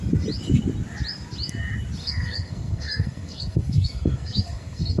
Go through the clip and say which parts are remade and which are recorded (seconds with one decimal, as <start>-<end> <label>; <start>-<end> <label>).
0.0-2.0 recorded; 2.0-5.0 remade